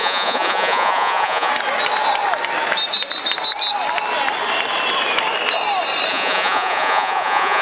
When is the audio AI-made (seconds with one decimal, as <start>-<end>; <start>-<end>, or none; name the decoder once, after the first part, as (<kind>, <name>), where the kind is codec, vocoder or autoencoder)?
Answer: 0.0-1.5 (vocoder, Vocos); 6.1-7.6